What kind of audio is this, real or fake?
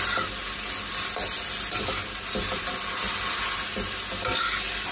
real